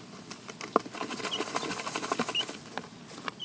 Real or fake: real